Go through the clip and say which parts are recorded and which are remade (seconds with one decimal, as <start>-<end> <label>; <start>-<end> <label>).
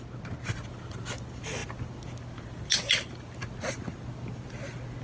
0.0-5.0 recorded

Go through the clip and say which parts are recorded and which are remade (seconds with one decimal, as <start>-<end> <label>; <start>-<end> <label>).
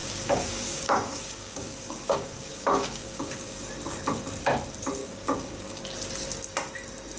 0.0-3.7 remade; 3.7-5.0 recorded; 5.0-5.8 remade; 5.8-7.2 recorded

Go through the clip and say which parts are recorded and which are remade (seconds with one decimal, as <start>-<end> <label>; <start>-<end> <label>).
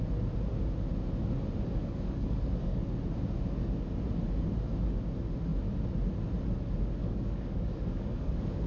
0.0-1.8 recorded; 1.8-2.9 remade; 2.9-7.0 recorded; 7.0-8.7 remade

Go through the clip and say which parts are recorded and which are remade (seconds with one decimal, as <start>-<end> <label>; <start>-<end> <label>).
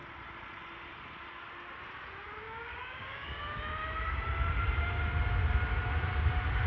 0.0-2.4 recorded; 2.4-3.6 remade; 3.6-6.7 recorded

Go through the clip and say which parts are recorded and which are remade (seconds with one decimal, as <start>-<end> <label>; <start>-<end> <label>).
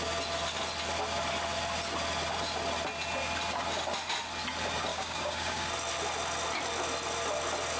0.0-4.9 recorded; 4.9-5.7 remade; 5.7-7.8 recorded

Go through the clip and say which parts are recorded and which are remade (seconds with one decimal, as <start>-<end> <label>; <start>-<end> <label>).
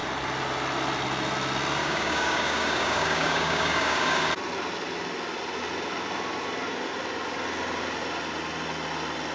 0.0-1.8 recorded; 1.8-4.3 remade; 4.3-9.3 recorded